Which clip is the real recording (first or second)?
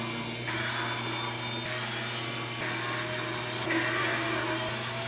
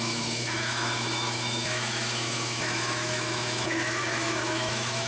first